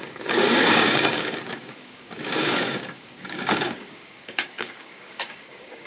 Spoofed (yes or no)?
yes